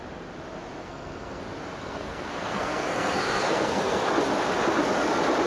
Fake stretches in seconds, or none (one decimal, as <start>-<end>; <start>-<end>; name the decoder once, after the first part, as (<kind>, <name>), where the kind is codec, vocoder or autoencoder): 0.8-1.4 (codec, SNAC); 1.8-4.1